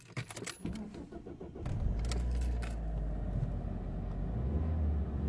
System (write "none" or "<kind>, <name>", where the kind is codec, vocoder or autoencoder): none